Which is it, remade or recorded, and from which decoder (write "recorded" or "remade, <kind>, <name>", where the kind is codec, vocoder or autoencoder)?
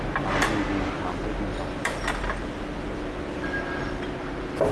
recorded